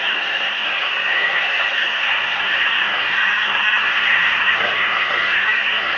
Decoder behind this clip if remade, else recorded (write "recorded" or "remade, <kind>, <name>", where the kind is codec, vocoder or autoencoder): remade, codec, SNAC